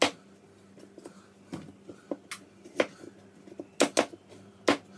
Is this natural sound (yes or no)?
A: yes